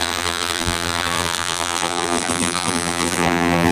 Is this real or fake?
fake